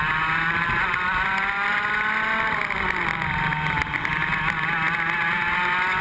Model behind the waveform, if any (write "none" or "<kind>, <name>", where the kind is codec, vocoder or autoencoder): none